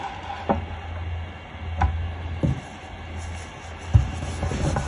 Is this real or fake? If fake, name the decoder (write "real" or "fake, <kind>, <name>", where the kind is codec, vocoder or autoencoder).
real